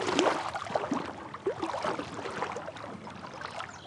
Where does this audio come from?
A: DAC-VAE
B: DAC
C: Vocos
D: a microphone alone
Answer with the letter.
D